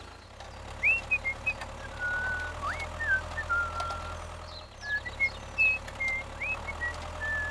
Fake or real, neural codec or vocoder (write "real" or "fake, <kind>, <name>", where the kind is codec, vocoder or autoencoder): real